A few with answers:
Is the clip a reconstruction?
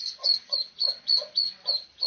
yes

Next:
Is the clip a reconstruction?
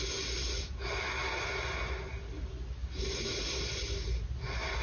no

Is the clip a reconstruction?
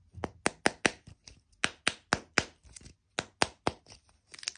no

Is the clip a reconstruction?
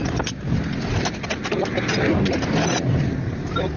no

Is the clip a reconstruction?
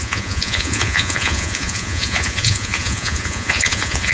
yes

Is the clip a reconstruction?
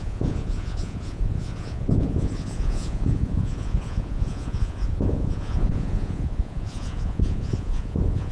yes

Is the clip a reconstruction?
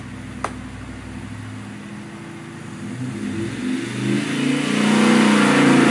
no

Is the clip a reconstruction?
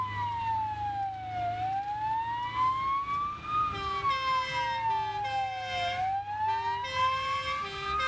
no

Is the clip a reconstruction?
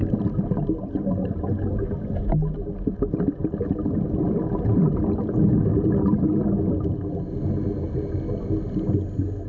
no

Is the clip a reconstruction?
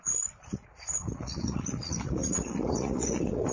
yes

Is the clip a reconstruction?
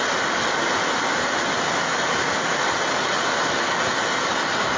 no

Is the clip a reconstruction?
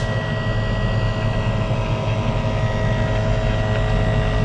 no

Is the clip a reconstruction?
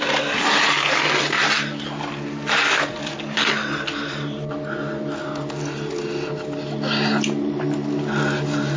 no